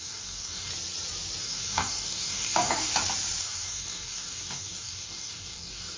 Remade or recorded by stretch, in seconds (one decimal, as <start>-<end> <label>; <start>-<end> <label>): 0.0-0.7 remade; 0.7-1.4 recorded; 1.4-2.9 remade; 2.9-3.4 recorded; 3.4-6.0 remade